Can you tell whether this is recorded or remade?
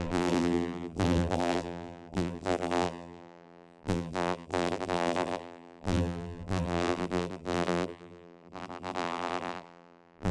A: remade